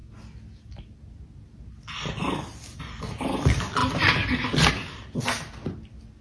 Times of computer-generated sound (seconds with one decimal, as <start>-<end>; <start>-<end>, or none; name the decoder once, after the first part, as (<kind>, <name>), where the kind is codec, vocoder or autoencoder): none